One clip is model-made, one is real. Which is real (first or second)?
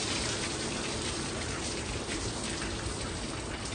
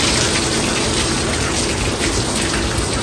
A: second